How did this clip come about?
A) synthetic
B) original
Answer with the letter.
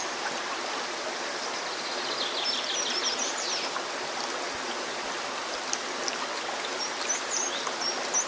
B